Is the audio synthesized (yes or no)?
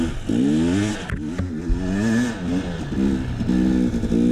no